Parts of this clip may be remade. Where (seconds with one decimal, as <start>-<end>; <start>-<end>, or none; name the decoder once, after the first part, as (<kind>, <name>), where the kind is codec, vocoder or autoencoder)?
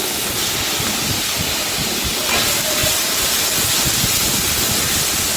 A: 2.8-3.3 (vocoder, BigVGAN v2)